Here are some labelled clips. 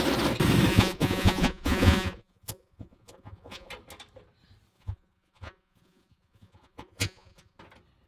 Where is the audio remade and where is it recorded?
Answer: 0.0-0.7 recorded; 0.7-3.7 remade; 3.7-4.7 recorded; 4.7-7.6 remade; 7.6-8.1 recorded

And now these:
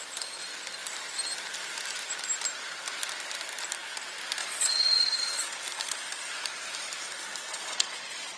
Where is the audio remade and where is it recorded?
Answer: 0.0-4.4 recorded; 4.4-5.6 remade; 5.6-7.5 recorded; 7.5-8.4 remade

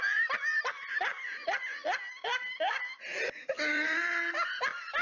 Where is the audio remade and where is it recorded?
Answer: 0.0-5.0 recorded

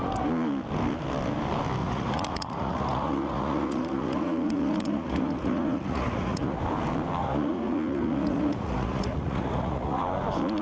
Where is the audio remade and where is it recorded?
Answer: 0.0-1.8 recorded; 1.8-6.6 remade; 6.6-7.2 recorded; 7.2-10.0 remade; 10.0-10.6 recorded

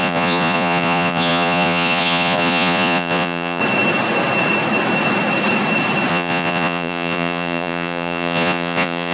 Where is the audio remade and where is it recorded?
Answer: 0.0-3.6 remade; 3.6-6.1 recorded; 6.1-9.1 remade

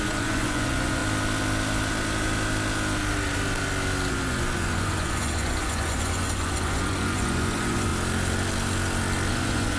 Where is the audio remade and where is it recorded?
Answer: 0.0-1.0 remade; 1.0-4.1 recorded; 4.1-7.9 remade; 7.9-9.3 recorded; 9.3-9.8 remade

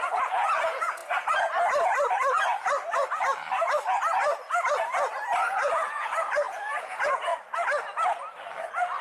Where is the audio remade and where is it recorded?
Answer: 0.0-1.0 remade; 1.0-5.5 recorded; 5.5-7.3 remade; 7.3-9.0 recorded